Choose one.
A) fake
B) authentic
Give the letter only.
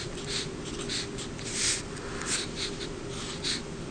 A